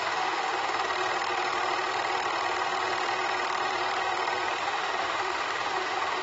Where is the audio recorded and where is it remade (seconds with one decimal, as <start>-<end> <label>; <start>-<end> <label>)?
0.0-0.9 remade; 0.9-4.6 recorded; 4.6-6.2 remade